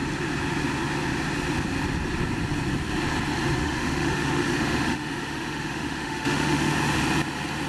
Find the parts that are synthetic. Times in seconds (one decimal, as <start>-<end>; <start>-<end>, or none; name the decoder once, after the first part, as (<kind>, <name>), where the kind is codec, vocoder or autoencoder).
3.6-6.7 (autoencoder, DAC-VAE)